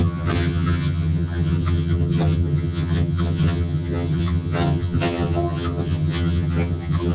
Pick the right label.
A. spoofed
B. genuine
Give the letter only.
A